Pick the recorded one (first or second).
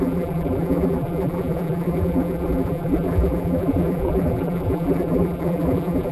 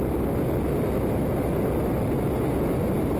second